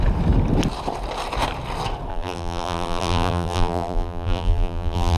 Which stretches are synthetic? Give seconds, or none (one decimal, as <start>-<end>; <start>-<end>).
2.1-5.2